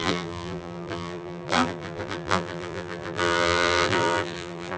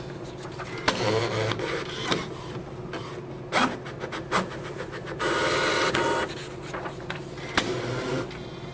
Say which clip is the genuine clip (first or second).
second